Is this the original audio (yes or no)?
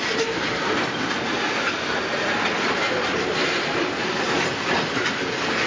yes